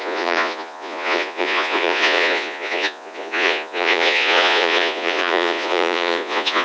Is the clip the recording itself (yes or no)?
no